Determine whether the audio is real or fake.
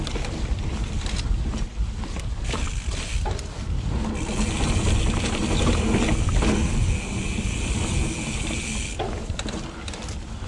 real